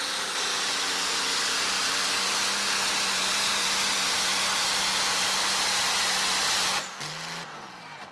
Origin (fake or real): real